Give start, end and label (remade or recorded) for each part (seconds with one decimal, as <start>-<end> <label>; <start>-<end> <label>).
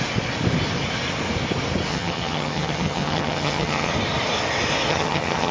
0.0-1.9 recorded; 1.9-3.9 remade; 3.9-4.9 recorded; 4.9-5.5 remade